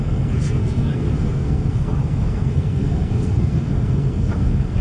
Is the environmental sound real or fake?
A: fake